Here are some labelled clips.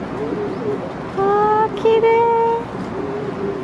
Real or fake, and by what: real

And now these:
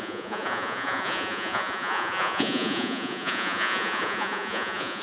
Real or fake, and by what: fake, vocoder, Vocos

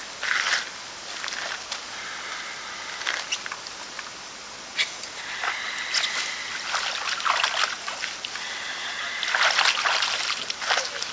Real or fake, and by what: real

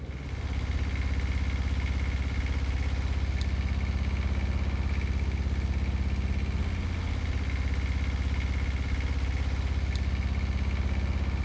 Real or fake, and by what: real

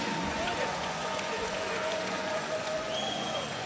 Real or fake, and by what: fake, vocoder, Vocos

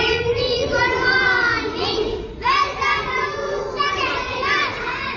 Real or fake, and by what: fake, vocoder, Vocos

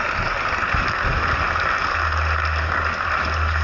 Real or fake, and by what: real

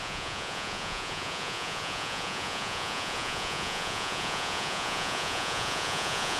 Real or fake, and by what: fake, vocoder, Vocos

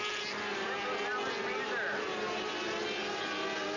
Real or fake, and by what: real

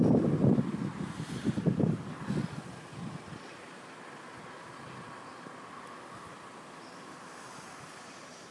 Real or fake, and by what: real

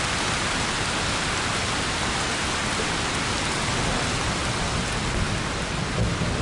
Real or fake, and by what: real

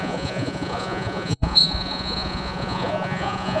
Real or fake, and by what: fake, vocoder, Vocos